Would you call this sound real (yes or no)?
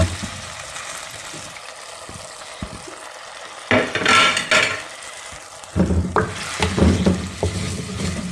yes